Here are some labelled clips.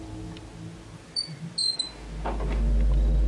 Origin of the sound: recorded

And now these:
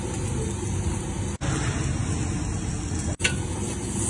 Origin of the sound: recorded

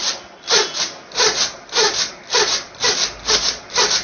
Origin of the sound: recorded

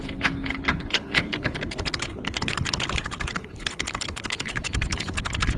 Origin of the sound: remade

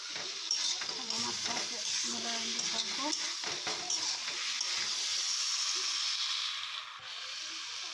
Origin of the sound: recorded